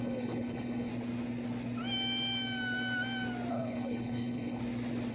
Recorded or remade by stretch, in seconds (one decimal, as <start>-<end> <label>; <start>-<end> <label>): 0.0-0.9 remade; 0.9-3.5 recorded; 3.5-4.6 remade; 4.6-5.1 recorded